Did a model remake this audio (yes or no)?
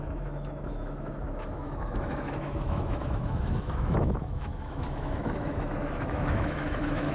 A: yes